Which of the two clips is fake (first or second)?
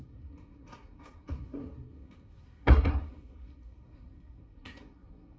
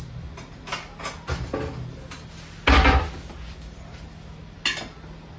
first